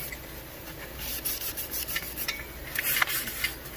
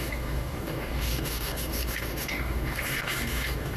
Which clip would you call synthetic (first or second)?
second